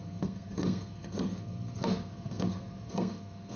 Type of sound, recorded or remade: remade